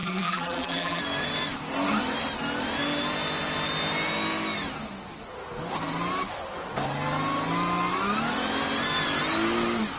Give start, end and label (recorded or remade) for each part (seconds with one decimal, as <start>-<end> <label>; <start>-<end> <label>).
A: 0.0-1.0 remade; 1.0-10.0 recorded